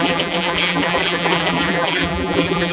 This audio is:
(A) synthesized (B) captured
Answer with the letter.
A